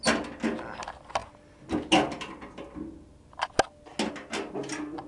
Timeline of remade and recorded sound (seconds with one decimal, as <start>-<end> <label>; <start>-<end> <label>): 0.0-5.1 recorded